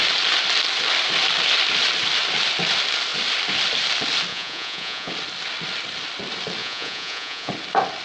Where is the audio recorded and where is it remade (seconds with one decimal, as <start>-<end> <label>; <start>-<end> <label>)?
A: 0.0-4.3 recorded; 4.3-5.1 remade; 5.1-6.6 recorded; 6.6-7.5 remade; 7.5-8.0 recorded